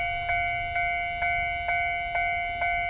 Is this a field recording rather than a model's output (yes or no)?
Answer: yes